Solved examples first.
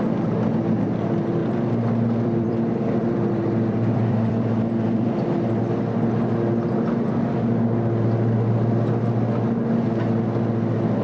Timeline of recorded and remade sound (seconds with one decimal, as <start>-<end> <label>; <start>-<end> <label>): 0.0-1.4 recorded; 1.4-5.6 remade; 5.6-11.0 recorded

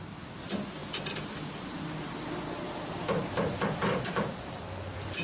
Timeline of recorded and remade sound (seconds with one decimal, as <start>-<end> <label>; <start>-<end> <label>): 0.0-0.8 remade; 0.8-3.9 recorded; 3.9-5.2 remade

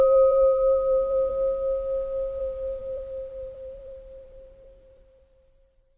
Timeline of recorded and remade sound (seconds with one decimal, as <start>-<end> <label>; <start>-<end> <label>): 0.0-1.3 remade; 1.3-2.4 recorded; 2.4-6.0 remade

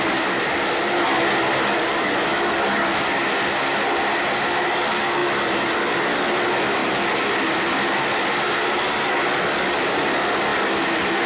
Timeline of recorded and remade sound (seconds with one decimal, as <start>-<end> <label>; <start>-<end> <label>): 0.0-6.8 recorded; 6.8-7.6 remade; 7.6-11.3 recorded